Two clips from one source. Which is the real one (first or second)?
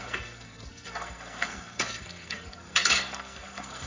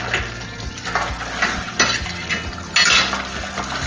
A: second